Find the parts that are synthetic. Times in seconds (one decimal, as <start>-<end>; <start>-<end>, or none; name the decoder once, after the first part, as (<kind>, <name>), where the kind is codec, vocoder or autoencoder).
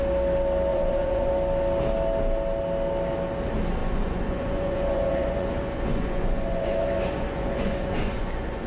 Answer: 0.7-1.3 (vocoder, Vocos); 3.8-8.7